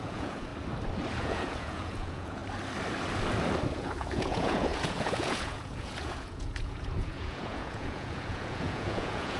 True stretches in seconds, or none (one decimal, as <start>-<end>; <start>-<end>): 0.5-1.2; 2.4-3.7